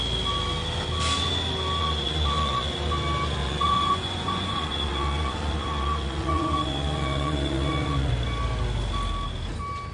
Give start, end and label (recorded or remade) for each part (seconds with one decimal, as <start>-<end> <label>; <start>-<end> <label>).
0.0-1.8 recorded; 1.8-2.8 remade; 2.8-3.4 recorded; 3.4-8.1 remade; 8.1-9.9 recorded